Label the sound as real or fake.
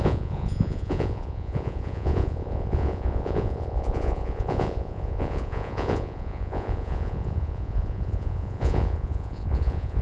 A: fake